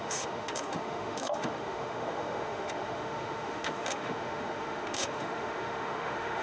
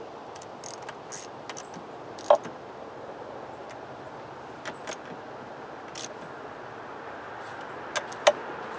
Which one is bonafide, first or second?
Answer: second